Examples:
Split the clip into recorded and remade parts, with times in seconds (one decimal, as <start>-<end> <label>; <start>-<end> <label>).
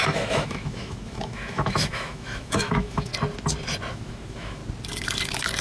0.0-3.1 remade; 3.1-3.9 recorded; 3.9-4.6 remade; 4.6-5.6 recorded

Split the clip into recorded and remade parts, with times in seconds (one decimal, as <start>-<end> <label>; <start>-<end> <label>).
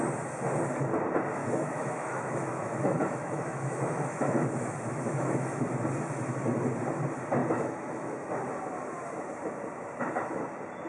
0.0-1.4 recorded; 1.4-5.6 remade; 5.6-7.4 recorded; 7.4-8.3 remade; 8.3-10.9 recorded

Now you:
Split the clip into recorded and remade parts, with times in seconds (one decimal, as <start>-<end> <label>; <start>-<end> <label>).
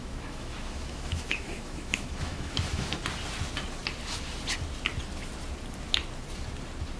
0.0-3.0 remade; 3.0-7.0 recorded